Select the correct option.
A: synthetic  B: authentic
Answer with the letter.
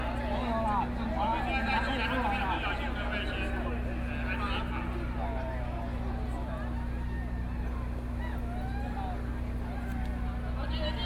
B